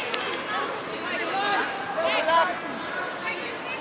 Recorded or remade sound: recorded